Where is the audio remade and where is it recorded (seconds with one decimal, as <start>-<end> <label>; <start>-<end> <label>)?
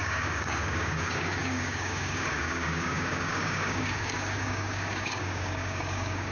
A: 0.0-6.3 remade